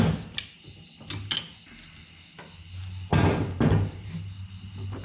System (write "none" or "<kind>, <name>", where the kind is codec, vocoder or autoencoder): none